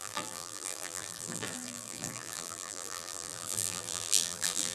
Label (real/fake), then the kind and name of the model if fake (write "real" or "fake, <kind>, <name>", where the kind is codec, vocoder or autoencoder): fake, vocoder, BigVGAN v2